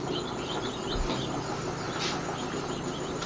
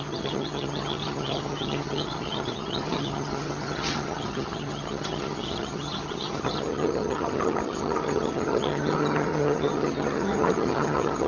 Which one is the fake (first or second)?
second